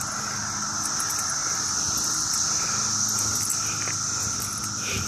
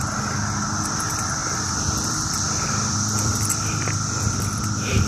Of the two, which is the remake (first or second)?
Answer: second